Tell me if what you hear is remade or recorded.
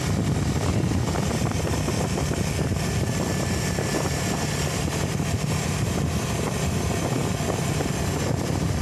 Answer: recorded